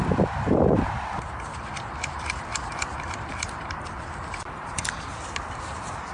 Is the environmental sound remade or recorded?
remade